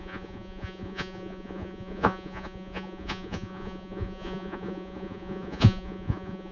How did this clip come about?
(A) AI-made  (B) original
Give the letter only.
A